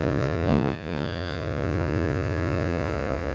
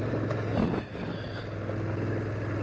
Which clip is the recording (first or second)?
second